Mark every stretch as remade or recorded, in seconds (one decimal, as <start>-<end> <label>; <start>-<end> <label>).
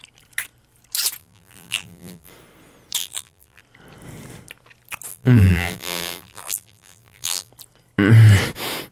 0.0-1.2 recorded; 1.2-2.3 remade; 2.3-3.0 recorded; 3.0-3.6 remade; 3.6-5.1 recorded; 5.1-7.5 remade; 7.5-8.9 recorded